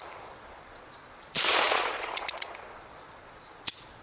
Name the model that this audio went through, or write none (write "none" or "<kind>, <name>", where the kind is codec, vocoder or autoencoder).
vocoder, Vocos